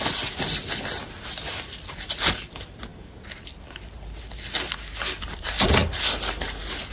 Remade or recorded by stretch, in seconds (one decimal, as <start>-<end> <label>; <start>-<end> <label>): 0.0-6.9 recorded